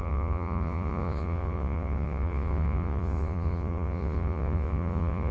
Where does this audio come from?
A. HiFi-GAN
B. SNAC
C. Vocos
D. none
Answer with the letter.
C